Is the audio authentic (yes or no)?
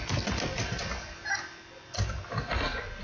yes